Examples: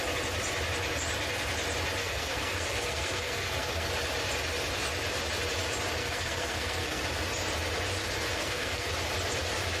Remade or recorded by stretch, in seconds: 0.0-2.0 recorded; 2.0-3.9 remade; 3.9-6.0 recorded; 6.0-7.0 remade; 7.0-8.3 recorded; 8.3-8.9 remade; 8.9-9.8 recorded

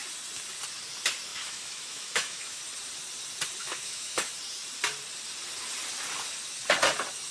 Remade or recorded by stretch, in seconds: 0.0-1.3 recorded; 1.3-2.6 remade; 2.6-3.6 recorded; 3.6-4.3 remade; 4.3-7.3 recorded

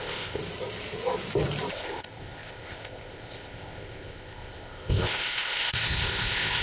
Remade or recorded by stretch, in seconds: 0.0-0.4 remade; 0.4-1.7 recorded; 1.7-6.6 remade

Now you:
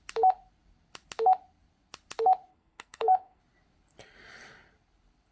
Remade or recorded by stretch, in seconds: 0.0-2.5 recorded; 2.5-3.4 remade; 3.4-5.3 recorded

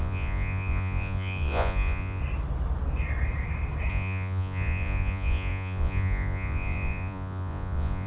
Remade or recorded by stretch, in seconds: 0.0-2.2 remade; 2.2-3.9 recorded; 3.9-8.1 remade

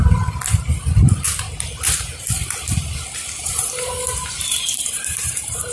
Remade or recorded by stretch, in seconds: 0.0-3.4 recorded; 3.4-5.7 remade

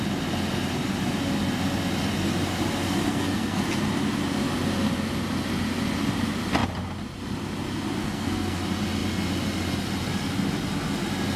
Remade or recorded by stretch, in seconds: 0.0-3.1 recorded; 3.1-3.6 remade; 3.6-8.0 recorded; 8.0-8.6 remade; 8.6-11.4 recorded

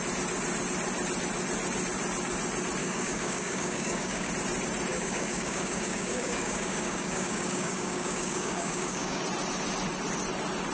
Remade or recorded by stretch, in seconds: 0.0-2.8 recorded; 2.8-4.3 remade; 4.3-4.9 recorded; 4.9-9.2 remade; 9.2-10.7 recorded